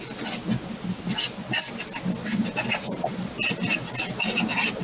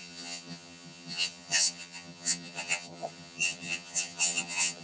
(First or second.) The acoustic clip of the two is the first